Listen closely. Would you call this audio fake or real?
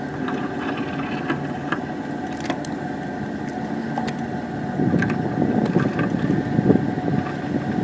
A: real